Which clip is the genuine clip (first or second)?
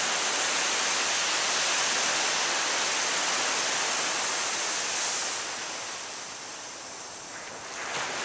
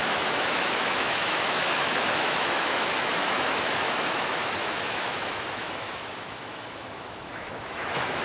first